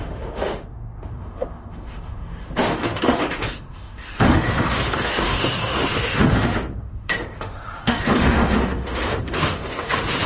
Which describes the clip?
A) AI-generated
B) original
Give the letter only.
A